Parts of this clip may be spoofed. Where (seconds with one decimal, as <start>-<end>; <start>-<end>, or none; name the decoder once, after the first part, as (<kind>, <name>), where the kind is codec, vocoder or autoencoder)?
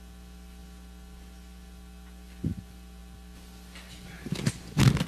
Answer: none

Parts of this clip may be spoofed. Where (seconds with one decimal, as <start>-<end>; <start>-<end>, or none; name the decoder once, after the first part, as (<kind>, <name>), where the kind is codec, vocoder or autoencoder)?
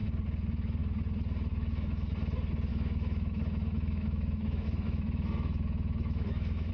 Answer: 1.5-2.1 (autoencoder, DAC-VAE); 2.7-6.7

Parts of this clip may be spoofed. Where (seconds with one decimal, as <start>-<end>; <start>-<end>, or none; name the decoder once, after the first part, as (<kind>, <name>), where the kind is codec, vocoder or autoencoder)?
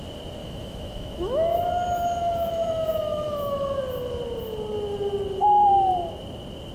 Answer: 0.4-3.8 (autoencoder, DAC-VAE)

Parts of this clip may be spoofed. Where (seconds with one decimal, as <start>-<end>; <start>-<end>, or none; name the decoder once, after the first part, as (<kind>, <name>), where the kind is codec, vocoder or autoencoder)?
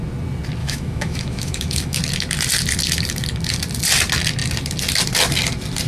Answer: 0.6-2.0 (autoencoder, DAC-VAE)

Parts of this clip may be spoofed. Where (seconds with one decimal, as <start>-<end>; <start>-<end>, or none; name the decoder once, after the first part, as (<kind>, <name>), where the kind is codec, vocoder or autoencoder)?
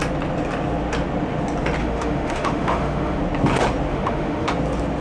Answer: 1.8-3.2 (autoencoder, DAC-VAE); 3.9-4.5